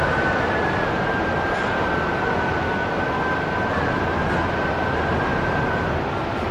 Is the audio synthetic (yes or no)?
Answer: no